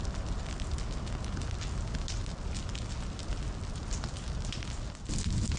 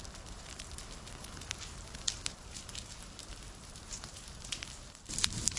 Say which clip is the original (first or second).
first